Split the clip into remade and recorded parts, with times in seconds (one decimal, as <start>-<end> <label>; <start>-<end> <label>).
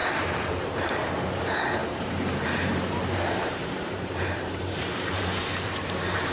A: 0.0-0.5 recorded; 0.5-6.3 remade